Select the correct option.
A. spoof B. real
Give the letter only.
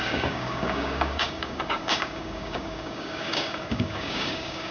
A